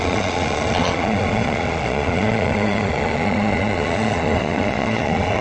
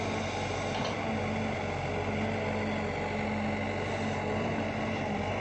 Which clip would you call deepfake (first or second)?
first